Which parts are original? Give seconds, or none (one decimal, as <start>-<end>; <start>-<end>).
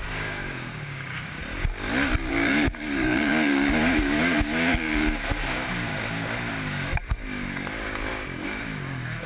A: 1.4-2.3; 5.9-6.5